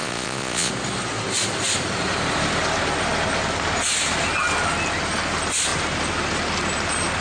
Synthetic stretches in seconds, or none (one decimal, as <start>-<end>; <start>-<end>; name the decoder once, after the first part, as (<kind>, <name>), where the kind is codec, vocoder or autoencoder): 0.0-0.7 (vocoder, Vocos)